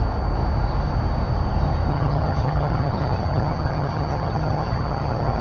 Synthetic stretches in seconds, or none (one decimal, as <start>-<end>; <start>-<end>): 1.9-5.4